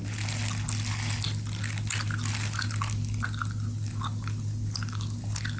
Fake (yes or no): no